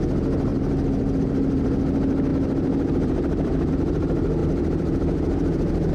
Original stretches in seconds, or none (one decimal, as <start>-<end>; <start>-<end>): 0.0-0.5; 1.2-2.3; 3.7-4.4